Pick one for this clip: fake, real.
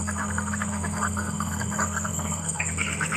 fake